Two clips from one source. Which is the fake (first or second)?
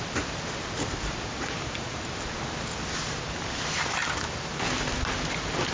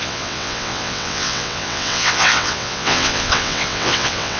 second